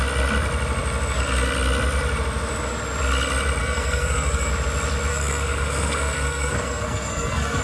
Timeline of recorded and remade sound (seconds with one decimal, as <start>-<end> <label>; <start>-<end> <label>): 0.0-3.6 recorded; 3.6-4.5 remade; 4.5-5.1 recorded; 5.1-7.6 remade